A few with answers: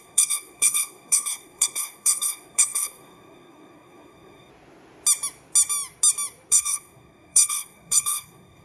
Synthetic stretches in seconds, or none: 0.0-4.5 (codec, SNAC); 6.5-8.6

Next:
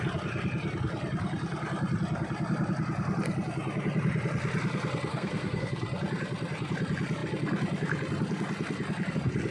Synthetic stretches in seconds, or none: 5.1-5.7 (codec, SNAC)

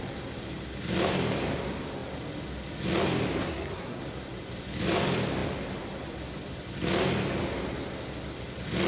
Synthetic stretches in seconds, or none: 3.4-4.0 (codec, SNAC)